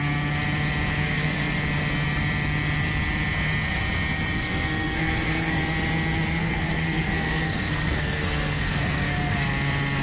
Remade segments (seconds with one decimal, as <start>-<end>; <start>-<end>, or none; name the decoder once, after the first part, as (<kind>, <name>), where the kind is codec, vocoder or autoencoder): 1.0-1.6 (codec, SNAC); 4.4-5.6; 6.4-9.5